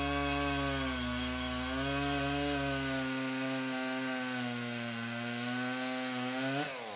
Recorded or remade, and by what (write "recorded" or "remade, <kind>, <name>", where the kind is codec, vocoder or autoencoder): recorded